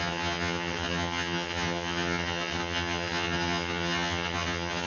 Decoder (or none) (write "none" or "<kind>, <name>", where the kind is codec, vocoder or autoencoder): vocoder, HiFi-GAN